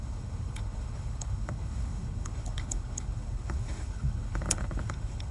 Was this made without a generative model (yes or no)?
no